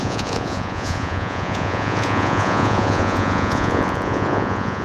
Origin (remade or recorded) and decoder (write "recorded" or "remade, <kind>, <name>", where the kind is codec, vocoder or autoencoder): remade, vocoder, Vocos